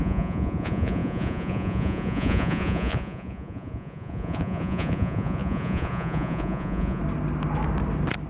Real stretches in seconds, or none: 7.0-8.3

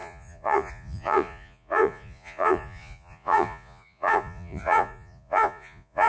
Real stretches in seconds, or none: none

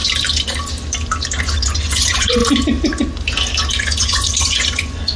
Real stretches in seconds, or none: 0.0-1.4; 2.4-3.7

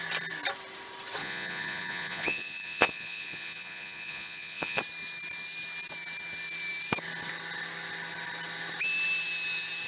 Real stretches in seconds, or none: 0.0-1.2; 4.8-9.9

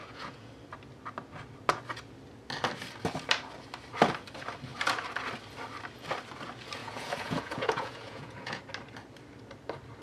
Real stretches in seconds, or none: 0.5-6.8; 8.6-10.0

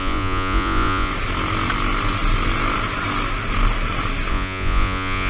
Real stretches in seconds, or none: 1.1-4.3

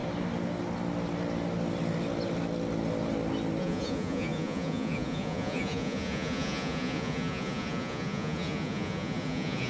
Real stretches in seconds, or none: 0.0-3.6

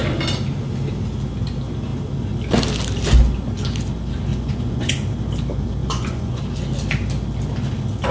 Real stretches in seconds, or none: 0.0-4.3; 4.9-5.8; 6.4-8.1